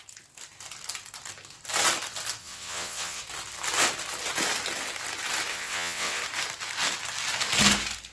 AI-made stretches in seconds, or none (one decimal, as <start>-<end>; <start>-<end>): 2.4-3.2; 5.5-6.2